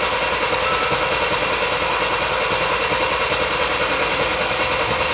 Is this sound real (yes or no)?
yes